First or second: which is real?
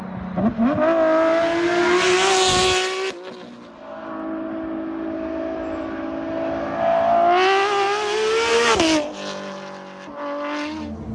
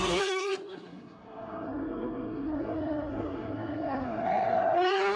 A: first